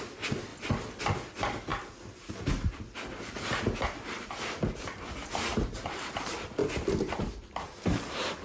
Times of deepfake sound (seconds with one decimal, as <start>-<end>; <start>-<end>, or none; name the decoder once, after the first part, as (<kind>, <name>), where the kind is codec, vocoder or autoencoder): 0.5-1.0 (vocoder, BigVGAN v2); 6.6-7.2